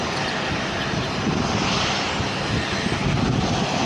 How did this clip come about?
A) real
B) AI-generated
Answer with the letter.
A